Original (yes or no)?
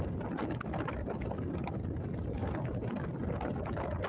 yes